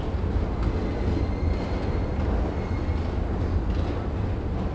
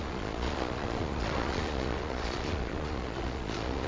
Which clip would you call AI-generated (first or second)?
second